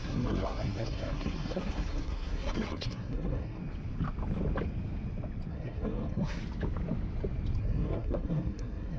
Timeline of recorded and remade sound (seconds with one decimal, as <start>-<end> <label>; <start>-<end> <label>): 0.0-3.6 remade; 3.6-5.5 recorded; 5.5-6.4 remade; 6.4-7.6 recorded; 7.6-9.0 remade